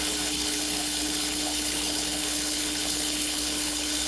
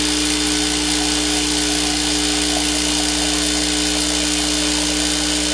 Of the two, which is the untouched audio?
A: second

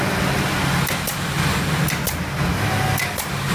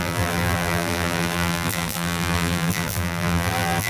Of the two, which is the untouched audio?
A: first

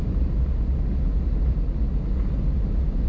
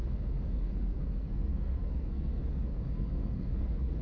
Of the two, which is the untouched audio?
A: first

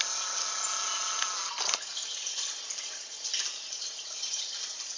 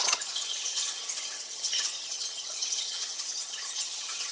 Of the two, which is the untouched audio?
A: first